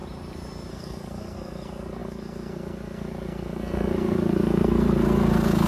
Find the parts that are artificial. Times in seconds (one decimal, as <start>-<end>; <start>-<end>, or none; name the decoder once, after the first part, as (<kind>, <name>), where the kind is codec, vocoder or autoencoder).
0.7-5.7 (codec, SNAC)